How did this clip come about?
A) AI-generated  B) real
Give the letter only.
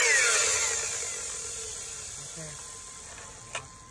B